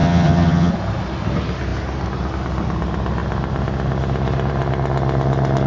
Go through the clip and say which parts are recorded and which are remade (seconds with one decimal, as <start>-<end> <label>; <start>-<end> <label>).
0.0-0.7 remade; 0.7-5.7 recorded